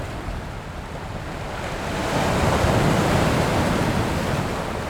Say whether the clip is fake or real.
real